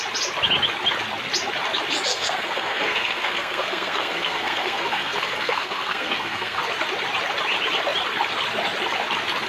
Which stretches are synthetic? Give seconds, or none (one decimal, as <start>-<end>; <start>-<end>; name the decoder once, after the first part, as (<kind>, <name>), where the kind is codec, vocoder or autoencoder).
2.1-6.6 (codec, SNAC)